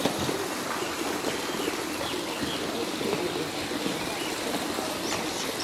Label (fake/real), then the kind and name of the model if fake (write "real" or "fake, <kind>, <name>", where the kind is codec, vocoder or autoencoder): real